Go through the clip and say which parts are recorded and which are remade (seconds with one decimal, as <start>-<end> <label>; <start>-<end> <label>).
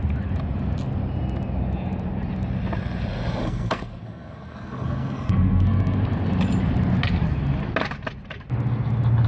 0.0-3.4 recorded; 3.4-6.0 remade; 6.0-9.3 recorded